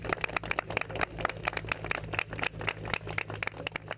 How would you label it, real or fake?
real